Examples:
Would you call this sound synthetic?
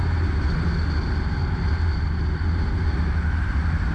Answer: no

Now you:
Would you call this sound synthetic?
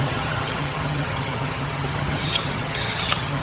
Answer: yes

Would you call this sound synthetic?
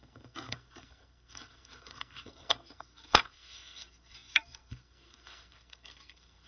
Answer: yes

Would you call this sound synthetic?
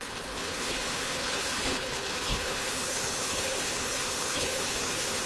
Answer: yes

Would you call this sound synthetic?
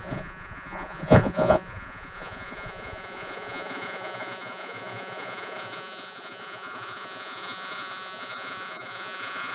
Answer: yes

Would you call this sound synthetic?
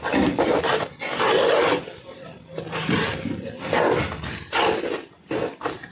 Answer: no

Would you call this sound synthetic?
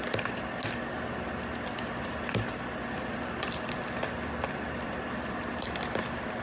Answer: no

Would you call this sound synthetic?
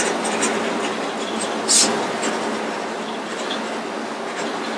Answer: no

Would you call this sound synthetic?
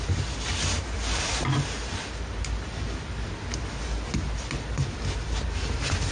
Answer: no